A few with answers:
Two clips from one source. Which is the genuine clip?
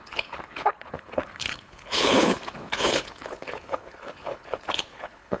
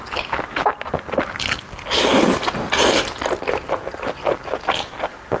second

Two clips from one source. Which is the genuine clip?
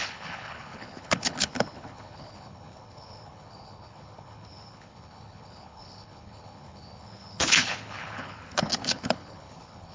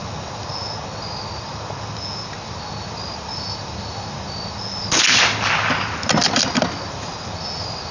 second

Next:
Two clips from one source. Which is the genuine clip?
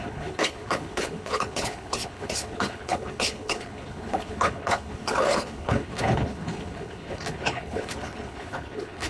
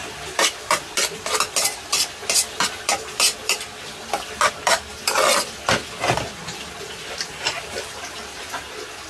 second